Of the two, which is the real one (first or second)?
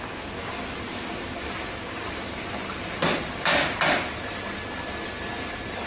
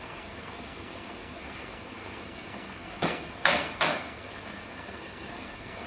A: first